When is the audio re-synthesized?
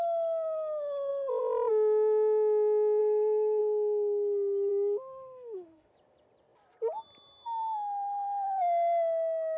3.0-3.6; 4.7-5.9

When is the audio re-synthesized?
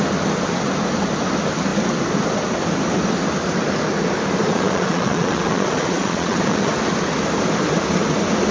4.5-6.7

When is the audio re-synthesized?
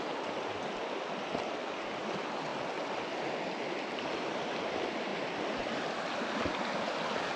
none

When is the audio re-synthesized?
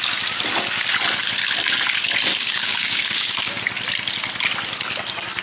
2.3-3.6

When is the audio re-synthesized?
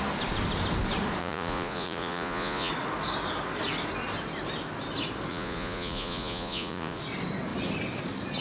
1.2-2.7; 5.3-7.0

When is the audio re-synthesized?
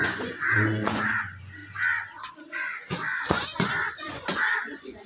0.0-1.6; 2.2-5.1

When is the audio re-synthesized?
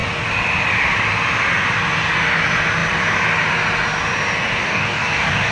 4.6-5.5